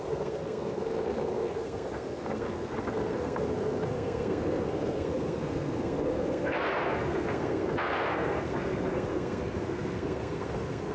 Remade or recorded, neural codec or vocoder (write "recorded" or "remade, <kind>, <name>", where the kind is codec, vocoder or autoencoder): remade, codec, SNAC